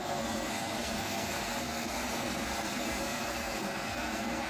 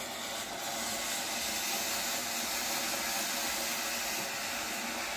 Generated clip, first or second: first